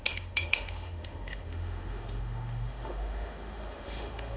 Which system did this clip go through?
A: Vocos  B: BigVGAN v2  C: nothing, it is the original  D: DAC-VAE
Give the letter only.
D